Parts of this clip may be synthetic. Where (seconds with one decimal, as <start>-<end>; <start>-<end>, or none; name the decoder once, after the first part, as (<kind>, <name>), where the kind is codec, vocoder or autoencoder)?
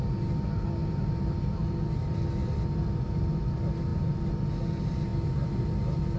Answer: none